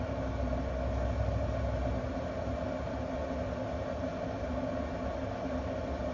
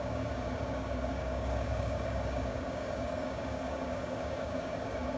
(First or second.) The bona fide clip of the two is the first